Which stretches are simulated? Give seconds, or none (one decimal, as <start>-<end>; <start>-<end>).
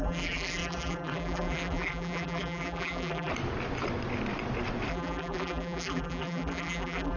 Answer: 0.0-3.3; 4.9-7.2